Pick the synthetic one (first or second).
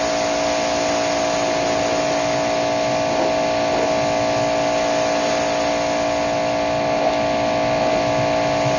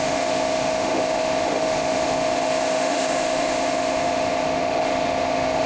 second